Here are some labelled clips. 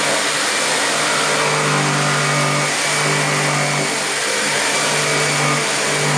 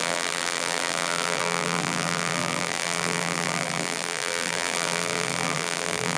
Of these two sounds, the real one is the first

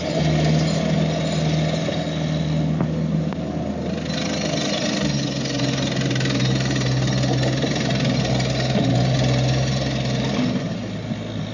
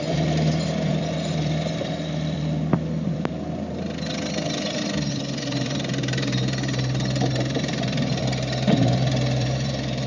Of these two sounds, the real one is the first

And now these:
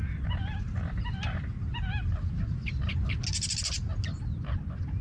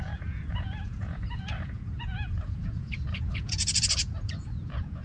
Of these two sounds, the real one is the first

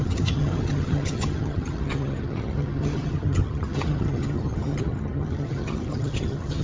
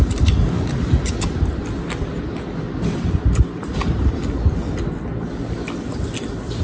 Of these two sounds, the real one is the second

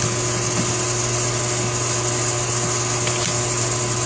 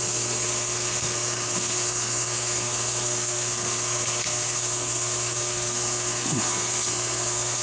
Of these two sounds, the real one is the first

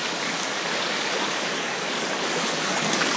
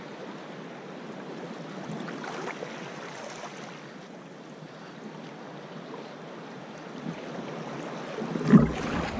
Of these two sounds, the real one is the second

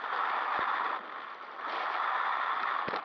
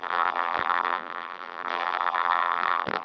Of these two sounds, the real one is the first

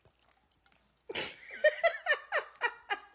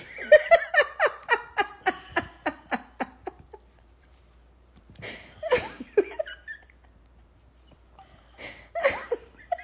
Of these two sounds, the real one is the first